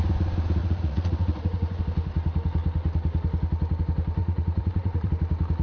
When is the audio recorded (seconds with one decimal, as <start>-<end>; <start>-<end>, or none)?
0.0-0.6; 1.8-4.2; 5.1-5.6